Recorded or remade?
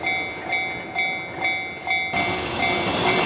recorded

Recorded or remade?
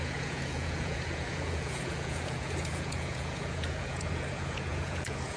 remade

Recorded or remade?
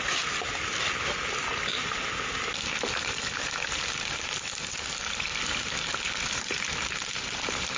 recorded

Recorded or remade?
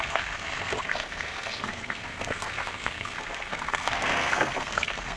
remade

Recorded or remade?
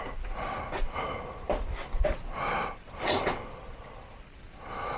recorded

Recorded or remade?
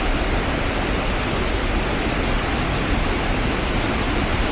recorded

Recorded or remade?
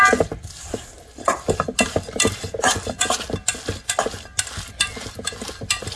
recorded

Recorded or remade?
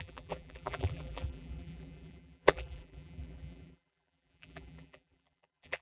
remade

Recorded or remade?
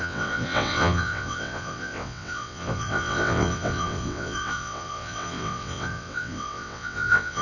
remade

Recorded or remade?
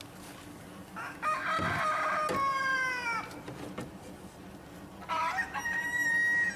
recorded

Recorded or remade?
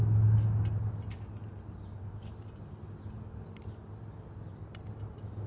recorded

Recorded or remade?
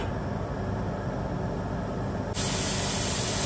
recorded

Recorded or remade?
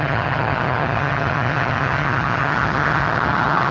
remade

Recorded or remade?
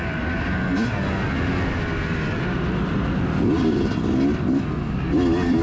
recorded